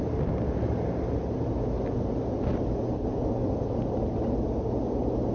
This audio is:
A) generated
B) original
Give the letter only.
B